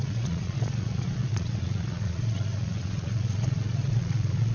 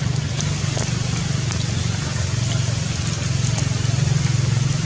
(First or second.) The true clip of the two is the second